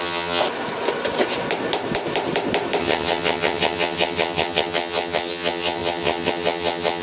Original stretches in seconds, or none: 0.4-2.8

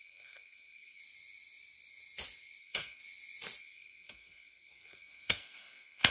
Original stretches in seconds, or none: 1.0-2.6; 3.0-3.6

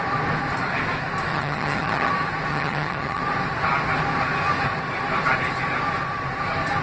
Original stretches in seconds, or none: 0.0-1.3; 2.1-2.5; 3.2-6.8

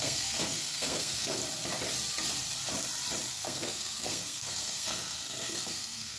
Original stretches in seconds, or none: 1.4-3.3

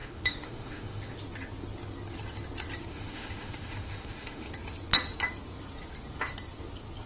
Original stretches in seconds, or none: 1.1-2.9; 4.5-7.1

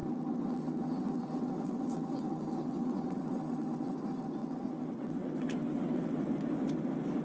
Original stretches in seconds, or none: 4.0-4.4; 6.2-7.2

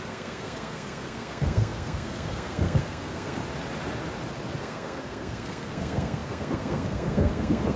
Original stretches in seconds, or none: 3.4-4.6